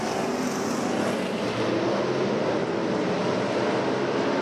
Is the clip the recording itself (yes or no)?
yes